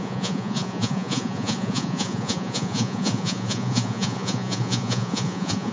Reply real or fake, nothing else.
fake